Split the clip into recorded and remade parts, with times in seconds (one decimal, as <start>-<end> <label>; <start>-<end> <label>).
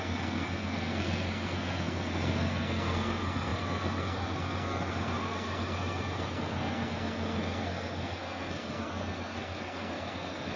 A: 0.0-10.6 remade